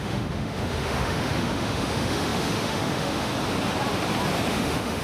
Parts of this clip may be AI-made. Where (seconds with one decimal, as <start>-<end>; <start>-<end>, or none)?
0.0-3.3; 4.5-5.0